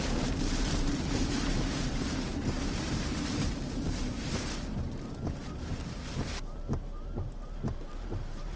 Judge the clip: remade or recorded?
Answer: remade